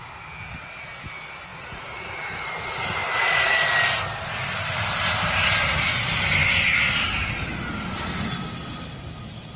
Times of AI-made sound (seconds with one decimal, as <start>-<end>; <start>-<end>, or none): 1.5-2.3